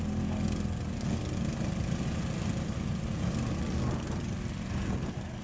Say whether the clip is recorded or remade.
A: recorded